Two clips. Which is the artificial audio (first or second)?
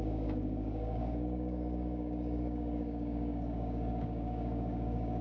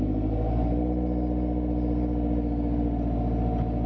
first